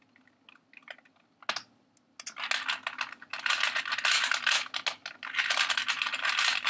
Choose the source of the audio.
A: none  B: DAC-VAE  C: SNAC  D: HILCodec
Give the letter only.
A